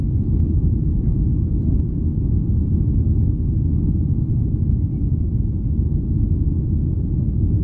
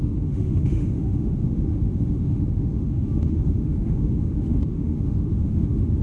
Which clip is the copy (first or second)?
second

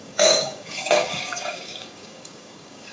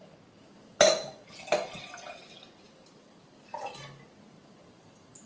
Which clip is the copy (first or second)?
first